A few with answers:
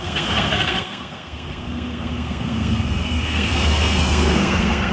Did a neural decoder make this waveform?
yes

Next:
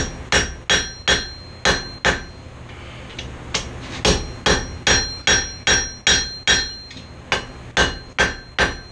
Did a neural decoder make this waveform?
no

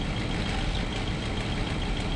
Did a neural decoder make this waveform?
no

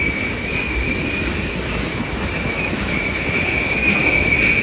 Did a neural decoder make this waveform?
yes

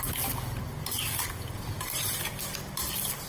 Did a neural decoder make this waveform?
no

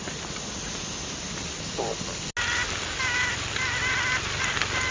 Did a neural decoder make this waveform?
no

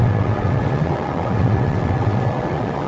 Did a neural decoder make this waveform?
yes